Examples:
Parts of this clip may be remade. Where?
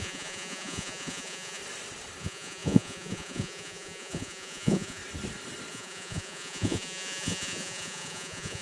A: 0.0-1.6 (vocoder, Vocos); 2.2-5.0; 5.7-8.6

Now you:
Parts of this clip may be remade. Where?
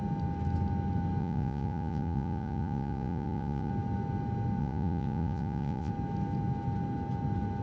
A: 1.2-3.7 (vocoder, Vocos); 4.6-5.9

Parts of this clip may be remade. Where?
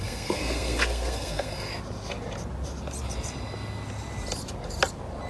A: 0.0-1.7 (codec, SNAC)